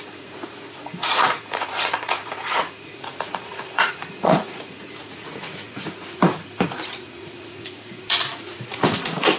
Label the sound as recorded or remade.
remade